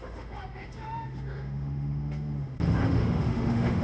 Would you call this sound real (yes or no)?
no